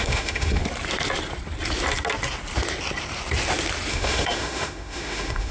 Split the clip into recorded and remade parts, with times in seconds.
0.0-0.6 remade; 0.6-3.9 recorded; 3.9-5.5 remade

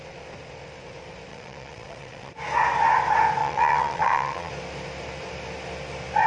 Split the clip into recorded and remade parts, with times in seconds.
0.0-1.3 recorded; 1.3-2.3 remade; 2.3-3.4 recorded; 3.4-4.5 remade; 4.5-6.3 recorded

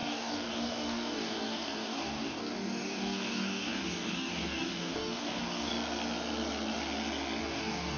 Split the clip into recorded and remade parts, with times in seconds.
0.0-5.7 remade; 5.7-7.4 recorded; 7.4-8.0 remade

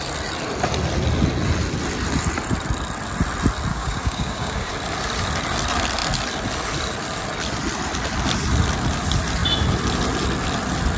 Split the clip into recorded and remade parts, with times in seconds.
0.0-3.7 recorded; 3.7-4.7 remade; 4.7-11.0 recorded